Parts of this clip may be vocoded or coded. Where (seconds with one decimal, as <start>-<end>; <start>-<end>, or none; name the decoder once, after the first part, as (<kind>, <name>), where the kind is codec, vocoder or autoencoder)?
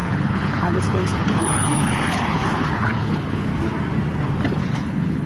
0.0-3.5 (codec, HILCodec); 4.6-5.3